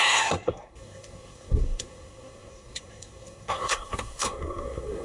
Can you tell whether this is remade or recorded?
remade